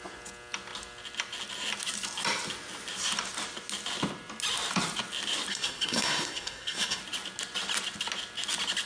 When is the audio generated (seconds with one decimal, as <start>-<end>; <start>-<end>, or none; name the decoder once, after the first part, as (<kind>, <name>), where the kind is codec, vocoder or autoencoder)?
5.5-7.0 (codec, SNAC)